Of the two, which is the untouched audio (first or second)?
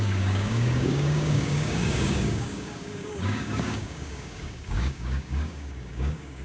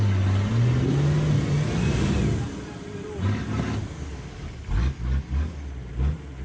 second